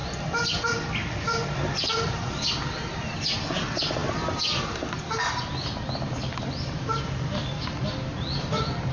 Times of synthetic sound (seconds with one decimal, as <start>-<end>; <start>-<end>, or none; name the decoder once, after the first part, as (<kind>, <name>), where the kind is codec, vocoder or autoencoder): none